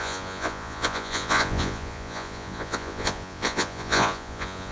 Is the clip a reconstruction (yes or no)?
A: yes